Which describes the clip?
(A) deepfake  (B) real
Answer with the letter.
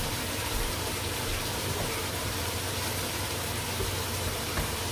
A